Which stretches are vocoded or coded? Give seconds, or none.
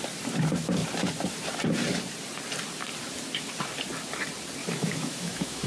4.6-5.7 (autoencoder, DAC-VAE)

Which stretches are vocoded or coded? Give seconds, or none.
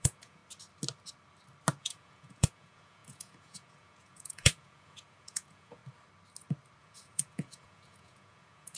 0.0-0.4 (vocoder, Vocos); 1.8-5.8; 6.8-8.8